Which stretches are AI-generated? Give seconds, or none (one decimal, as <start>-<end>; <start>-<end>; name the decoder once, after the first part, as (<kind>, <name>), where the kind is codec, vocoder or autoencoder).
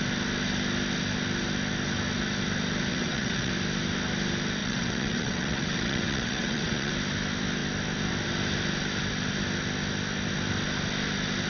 2.9-3.5 (vocoder, WaveNeXt); 4.6-6.9